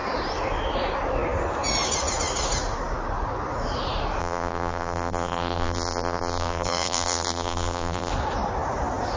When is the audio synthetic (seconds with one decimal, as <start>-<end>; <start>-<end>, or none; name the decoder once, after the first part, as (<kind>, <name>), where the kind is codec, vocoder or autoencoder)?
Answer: 4.2-8.1 (vocoder, BigVGAN v2)